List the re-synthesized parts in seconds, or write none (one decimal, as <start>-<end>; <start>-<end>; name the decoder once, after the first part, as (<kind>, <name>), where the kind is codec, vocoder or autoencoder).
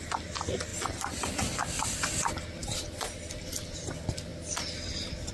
0.7-1.3 (vocoder, BigVGAN v2); 2.6-3.9